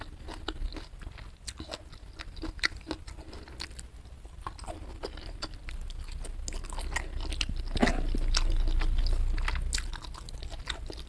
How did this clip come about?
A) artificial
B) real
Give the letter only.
B